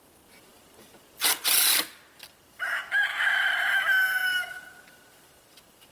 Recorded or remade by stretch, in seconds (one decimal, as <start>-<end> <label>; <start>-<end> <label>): 0.0-3.1 recorded; 3.1-3.7 remade; 3.7-5.9 recorded